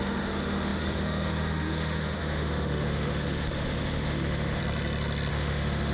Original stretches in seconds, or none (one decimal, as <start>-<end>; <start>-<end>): 4.6-5.3